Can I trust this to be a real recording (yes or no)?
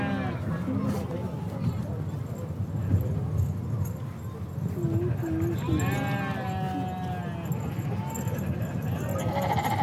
yes